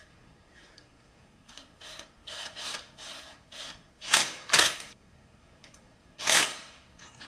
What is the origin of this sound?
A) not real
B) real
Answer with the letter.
A